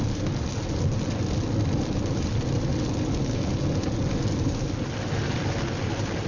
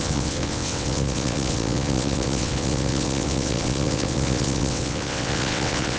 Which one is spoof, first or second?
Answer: second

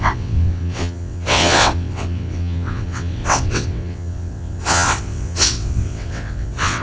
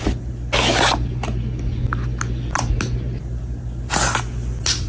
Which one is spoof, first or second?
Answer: first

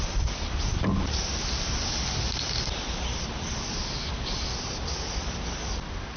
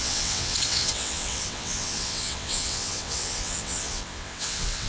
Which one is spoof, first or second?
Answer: second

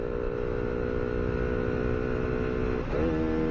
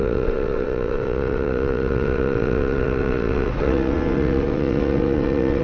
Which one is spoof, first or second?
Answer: second